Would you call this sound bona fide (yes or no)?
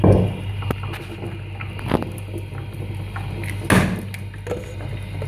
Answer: yes